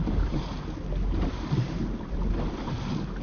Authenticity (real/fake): real